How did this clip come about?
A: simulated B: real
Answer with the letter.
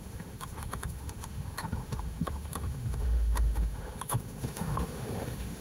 A